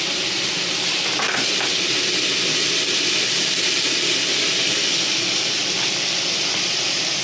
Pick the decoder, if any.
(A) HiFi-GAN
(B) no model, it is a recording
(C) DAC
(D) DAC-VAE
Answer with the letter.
B